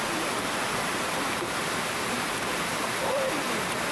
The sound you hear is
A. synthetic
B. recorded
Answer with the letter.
A